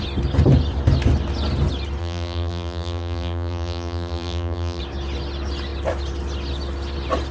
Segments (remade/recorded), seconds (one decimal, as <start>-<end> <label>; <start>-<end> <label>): 0.0-2.0 recorded; 2.0-4.8 remade; 4.8-7.3 recorded